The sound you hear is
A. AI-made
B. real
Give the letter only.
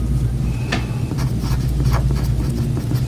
B